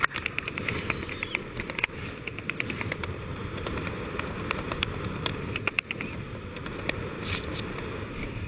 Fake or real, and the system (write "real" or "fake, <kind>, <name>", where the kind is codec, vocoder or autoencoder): real